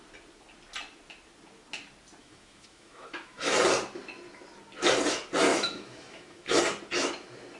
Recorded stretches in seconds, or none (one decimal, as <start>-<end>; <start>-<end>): 0.0-2.2; 3.5-5.5; 6.6-7.6